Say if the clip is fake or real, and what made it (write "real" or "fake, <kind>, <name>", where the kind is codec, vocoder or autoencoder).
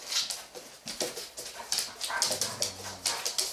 real